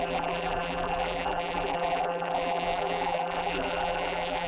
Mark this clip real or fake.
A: fake